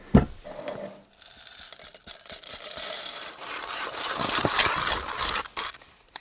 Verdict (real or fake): real